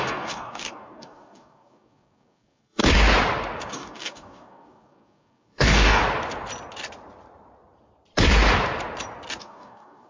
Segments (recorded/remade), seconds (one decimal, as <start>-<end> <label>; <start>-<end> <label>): 0.0-2.8 remade; 2.8-3.7 recorded; 3.7-6.0 remade; 6.0-9.4 recorded; 9.4-10.1 remade